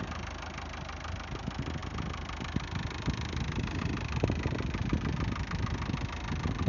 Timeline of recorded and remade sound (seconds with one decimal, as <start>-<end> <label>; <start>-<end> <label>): 0.0-6.7 recorded

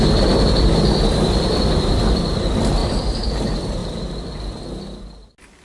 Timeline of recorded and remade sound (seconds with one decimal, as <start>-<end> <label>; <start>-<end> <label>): 0.0-2.8 recorded; 2.8-3.3 remade; 3.3-5.6 recorded

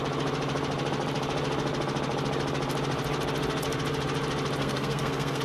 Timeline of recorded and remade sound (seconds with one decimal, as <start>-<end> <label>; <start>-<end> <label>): 0.0-4.6 recorded; 4.6-5.4 remade

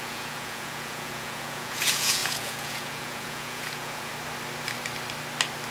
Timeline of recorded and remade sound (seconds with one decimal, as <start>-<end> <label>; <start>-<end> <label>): 0.0-4.1 remade; 4.1-5.7 recorded

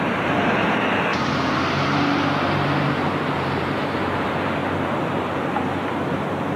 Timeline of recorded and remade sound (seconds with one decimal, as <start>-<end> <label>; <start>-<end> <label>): 0.0-1.1 remade; 1.1-2.5 recorded; 2.5-4.6 remade; 4.6-6.6 recorded